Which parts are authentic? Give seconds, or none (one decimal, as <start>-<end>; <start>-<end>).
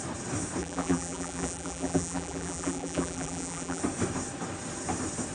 0.0-0.6; 3.8-5.3